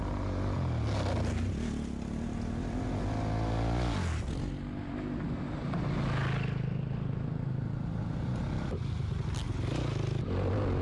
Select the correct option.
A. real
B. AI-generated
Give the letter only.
A